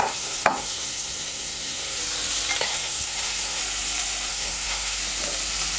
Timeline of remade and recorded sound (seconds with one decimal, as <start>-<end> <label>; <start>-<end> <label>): 0.0-2.0 remade; 2.0-2.6 recorded; 2.6-3.6 remade; 3.6-4.3 recorded; 4.3-5.0 remade; 5.0-5.8 recorded

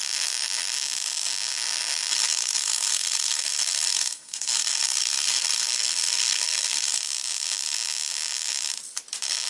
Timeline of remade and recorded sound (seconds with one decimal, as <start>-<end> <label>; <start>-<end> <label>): 0.0-2.1 recorded; 2.1-7.0 remade; 7.0-9.5 recorded

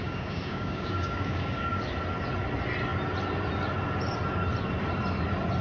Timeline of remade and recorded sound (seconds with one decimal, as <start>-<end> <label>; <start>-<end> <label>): 0.0-1.8 remade; 1.8-5.6 recorded

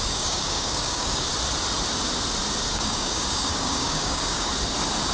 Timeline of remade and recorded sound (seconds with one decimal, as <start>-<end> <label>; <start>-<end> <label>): 0.0-1.3 remade; 1.3-2.7 recorded; 2.7-4.5 remade; 4.5-5.1 recorded

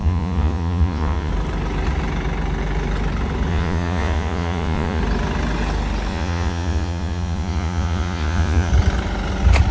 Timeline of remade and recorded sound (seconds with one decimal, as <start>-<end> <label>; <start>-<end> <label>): 0.0-1.3 remade; 1.3-3.5 recorded; 3.5-5.0 remade; 5.0-6.1 recorded; 6.1-8.7 remade; 8.7-9.7 recorded

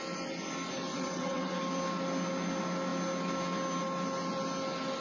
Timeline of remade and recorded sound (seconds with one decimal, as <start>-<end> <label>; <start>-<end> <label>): 0.0-0.9 recorded; 0.9-1.6 remade; 1.6-5.0 recorded